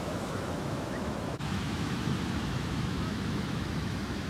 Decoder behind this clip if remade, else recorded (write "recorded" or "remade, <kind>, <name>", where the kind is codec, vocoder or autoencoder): remade, autoencoder, DAC-VAE